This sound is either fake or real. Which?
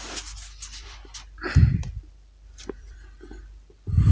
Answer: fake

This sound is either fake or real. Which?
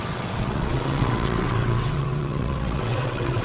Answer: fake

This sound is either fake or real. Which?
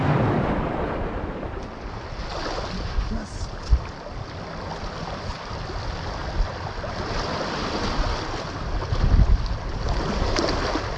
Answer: real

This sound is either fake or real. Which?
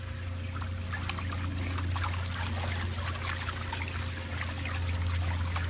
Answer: real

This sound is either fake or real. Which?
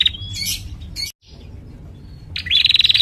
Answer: real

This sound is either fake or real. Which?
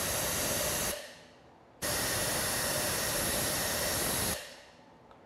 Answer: real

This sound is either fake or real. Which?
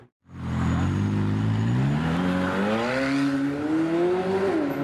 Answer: real